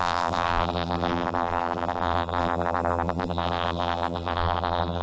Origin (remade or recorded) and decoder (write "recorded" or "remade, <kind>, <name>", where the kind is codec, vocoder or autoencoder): remade, vocoder, BigVGAN v2